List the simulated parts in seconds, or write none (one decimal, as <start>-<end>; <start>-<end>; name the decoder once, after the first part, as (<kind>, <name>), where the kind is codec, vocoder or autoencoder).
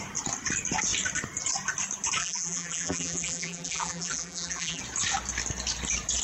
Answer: 2.2-4.8 (vocoder, BigVGAN v2)